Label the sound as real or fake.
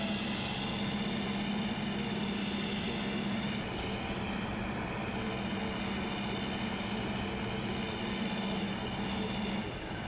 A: real